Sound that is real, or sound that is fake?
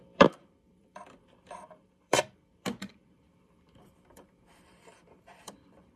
fake